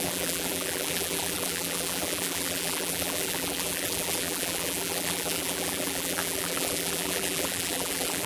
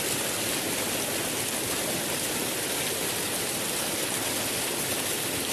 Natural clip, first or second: second